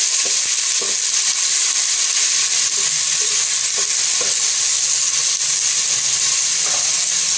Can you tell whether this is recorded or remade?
recorded